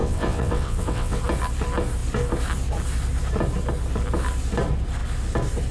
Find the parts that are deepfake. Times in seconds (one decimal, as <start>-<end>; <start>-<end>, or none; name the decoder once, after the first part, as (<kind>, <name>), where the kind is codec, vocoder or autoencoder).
0.0-1.2 (vocoder, WaveNeXt)